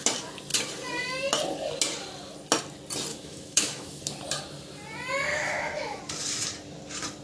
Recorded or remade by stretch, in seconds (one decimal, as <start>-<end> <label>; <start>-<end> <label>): 0.0-3.1 recorded; 3.1-4.0 remade; 4.0-5.3 recorded; 5.3-6.0 remade; 6.0-7.2 recorded